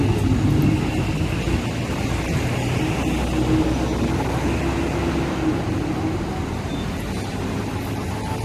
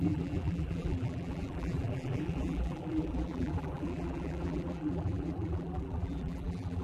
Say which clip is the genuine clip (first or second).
first